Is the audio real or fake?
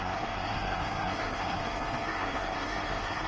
fake